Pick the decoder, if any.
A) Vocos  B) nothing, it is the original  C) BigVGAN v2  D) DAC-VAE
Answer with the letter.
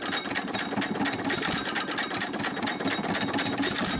B